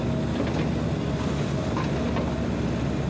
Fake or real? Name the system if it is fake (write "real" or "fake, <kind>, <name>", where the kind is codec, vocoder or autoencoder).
real